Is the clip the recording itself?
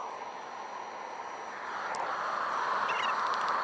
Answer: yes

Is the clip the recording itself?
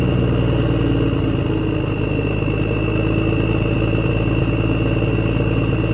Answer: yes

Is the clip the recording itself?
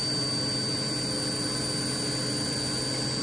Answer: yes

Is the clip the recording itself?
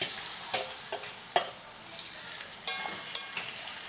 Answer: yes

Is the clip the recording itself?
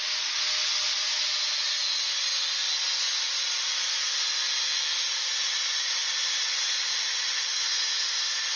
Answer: yes